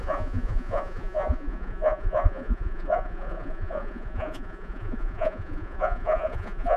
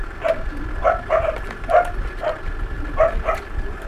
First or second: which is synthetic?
first